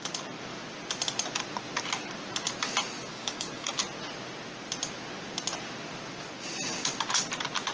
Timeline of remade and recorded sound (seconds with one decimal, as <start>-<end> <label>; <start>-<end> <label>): 0.0-3.1 recorded; 3.1-3.7 remade; 3.7-7.7 recorded